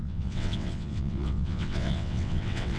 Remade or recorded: remade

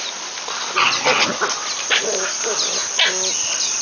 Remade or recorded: recorded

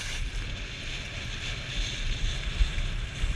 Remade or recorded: recorded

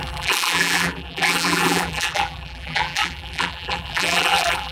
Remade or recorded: remade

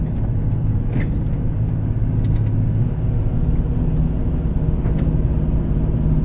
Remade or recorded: recorded